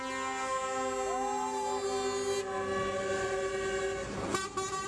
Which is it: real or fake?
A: real